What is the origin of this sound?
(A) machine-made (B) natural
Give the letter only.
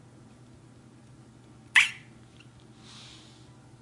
B